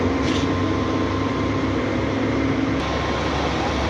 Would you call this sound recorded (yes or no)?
yes